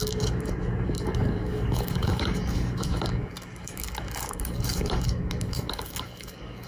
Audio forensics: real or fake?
fake